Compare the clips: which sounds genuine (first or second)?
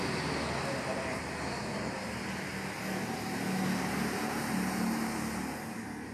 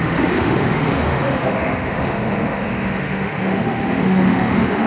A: first